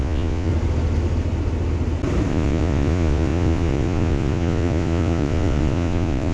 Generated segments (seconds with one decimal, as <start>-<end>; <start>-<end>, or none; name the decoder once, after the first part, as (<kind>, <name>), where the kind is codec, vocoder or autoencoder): 0.0-0.5 (vocoder, Vocos); 2.3-6.3